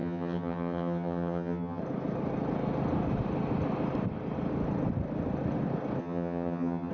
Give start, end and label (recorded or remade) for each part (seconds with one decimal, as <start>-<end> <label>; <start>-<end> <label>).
0.0-1.8 remade; 1.8-6.0 recorded; 6.0-6.9 remade

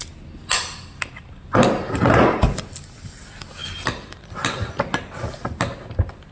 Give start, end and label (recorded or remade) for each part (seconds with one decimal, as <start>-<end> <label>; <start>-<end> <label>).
0.0-6.3 recorded

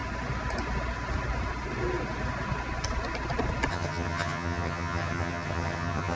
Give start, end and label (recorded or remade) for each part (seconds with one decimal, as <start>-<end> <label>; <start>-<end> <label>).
0.0-3.7 recorded; 3.7-6.2 remade

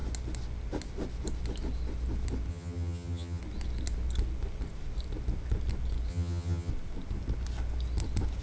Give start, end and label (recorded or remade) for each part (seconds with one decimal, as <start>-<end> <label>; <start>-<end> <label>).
0.0-2.5 recorded; 2.5-3.4 remade; 3.4-6.1 recorded; 6.1-6.7 remade; 6.7-8.4 recorded

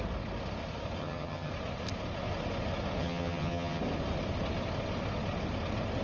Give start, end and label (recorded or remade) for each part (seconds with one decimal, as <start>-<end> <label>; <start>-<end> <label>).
0.0-1.0 recorded; 1.0-1.5 remade; 1.5-3.0 recorded; 3.0-3.8 remade; 3.8-6.0 recorded

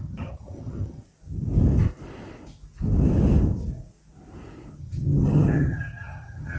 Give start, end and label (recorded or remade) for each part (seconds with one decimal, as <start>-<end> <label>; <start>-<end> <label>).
0.0-1.0 remade; 1.0-4.8 recorded; 4.8-6.6 remade